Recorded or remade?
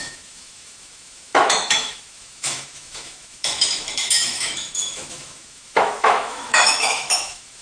remade